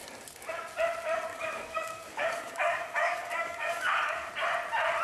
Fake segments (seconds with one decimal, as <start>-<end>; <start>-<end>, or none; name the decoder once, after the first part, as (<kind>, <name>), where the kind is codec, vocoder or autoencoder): 1.3-4.3 (codec, DAC)

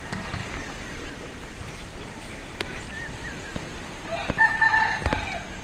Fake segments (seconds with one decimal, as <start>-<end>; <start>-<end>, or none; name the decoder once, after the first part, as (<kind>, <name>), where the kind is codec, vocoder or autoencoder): 0.4-3.7 (vocoder, BigVGAN v2)

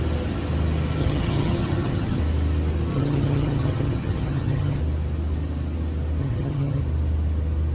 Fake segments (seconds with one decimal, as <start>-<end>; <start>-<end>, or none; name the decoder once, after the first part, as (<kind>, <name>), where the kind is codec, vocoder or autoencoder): 1.0-2.2 (vocoder, HiFi-GAN); 2.9-4.8; 6.2-6.8

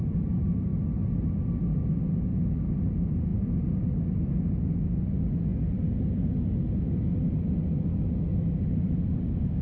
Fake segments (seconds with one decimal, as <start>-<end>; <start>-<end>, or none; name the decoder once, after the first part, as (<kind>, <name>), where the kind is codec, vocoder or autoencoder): none

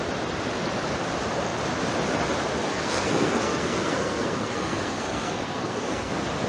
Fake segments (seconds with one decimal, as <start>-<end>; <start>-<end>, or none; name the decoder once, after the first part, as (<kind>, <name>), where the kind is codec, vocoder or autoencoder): 2.7-6.1 (codec, SNAC)

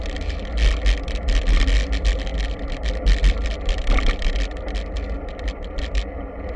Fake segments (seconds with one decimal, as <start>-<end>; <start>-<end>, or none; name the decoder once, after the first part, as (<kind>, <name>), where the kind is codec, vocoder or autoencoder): none